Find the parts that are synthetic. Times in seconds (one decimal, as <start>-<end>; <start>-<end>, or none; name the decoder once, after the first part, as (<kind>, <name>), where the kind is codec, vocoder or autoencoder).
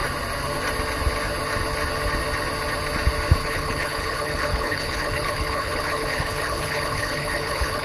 3.4-7.8 (codec, HILCodec)